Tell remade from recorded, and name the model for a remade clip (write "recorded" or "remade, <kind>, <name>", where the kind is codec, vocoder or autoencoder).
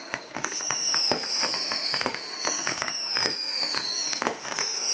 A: remade, autoencoder, DAC-VAE